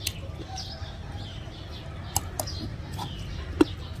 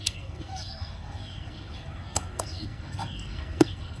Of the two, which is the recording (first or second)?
first